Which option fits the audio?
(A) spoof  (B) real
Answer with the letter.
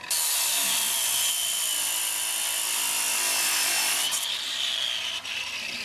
B